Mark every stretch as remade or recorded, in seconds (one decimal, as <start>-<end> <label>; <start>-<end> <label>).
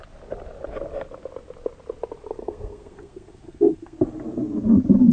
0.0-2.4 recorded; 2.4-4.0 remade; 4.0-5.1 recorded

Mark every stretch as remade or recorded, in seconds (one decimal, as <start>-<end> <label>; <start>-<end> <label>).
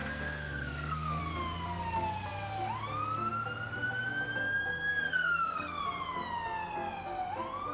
0.0-1.2 remade; 1.2-4.9 recorded; 4.9-5.8 remade; 5.8-7.7 recorded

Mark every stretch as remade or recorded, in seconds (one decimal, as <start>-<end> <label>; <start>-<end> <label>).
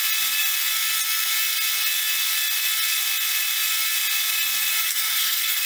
0.0-4.8 recorded; 4.8-5.7 remade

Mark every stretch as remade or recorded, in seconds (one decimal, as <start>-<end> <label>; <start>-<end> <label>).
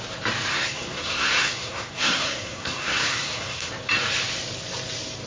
0.0-0.5 recorded; 0.5-3.7 remade; 3.7-5.3 recorded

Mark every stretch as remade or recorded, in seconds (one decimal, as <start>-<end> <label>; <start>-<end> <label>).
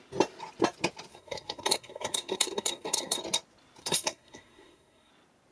0.0-1.1 recorded; 1.1-3.2 remade; 3.2-3.8 recorded; 3.8-5.1 remade; 5.1-5.5 recorded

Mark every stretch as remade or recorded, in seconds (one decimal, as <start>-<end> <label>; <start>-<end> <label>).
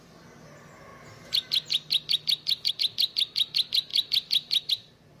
0.0-5.2 recorded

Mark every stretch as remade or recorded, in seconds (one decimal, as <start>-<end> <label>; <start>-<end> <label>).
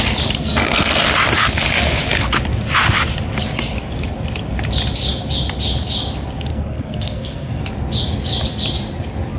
0.0-0.4 recorded; 0.4-1.0 remade; 1.0-6.5 recorded; 6.5-7.6 remade; 7.6-9.4 recorded